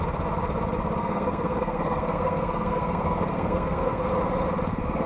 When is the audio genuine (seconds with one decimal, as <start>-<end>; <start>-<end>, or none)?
0.0-1.0; 4.1-5.1

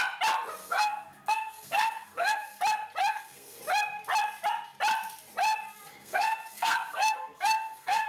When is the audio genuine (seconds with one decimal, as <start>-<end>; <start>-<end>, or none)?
0.0-0.6; 2.6-3.1; 3.6-5.9

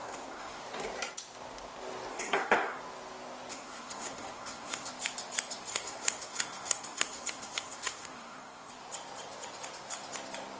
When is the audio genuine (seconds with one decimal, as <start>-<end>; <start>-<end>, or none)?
0.6-2.1; 2.8-3.5; 4.9-5.7; 8.7-10.6

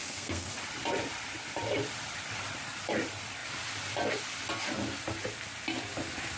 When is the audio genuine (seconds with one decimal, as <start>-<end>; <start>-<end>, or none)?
0.5-6.4

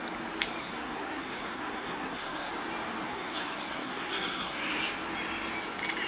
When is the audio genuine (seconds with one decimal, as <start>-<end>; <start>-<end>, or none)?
0.0-0.6; 2.5-3.1; 4.8-6.1